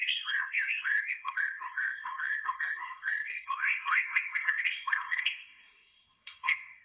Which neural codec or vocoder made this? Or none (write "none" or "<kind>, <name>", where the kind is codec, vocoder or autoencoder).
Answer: codec, SNAC